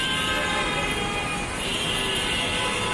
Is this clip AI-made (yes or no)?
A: no